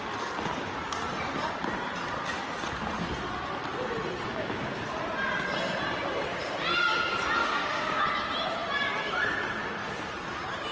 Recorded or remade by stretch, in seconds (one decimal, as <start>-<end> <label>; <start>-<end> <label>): 0.0-4.3 recorded; 4.3-4.8 remade; 4.8-7.4 recorded; 7.4-8.0 remade; 8.0-10.7 recorded